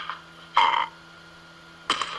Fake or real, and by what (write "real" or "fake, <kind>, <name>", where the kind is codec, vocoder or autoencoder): real